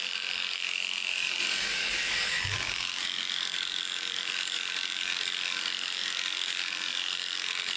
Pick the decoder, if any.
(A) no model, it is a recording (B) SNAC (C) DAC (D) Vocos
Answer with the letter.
C